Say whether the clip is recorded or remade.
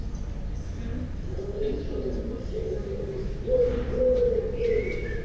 recorded